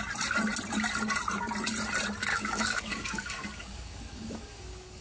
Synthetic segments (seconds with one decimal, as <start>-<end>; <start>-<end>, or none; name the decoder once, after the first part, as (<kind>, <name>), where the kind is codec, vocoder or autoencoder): 2.3-5.0 (codec, DAC)